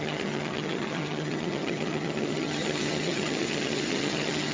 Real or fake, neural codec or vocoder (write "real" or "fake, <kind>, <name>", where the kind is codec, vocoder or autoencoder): fake, vocoder, HiFi-GAN